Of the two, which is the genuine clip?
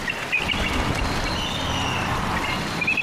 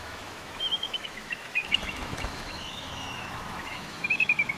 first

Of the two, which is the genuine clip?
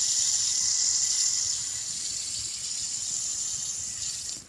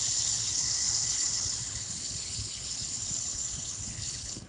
first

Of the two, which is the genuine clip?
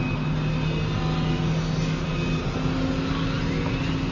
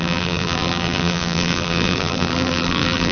first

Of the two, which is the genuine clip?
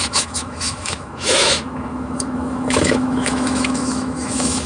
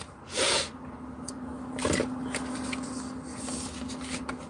second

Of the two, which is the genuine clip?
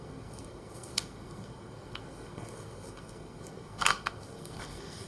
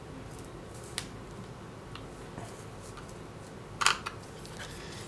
second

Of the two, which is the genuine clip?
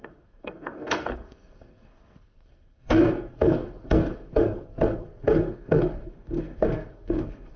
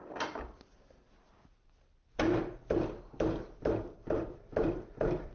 second